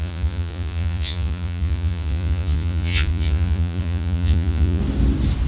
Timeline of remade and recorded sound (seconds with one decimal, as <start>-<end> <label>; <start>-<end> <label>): 0.0-4.8 remade; 4.8-5.5 recorded